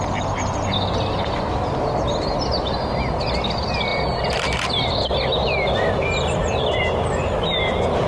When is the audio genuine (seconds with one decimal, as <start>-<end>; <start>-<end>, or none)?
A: 0.0-3.9; 4.7-5.4; 6.8-8.1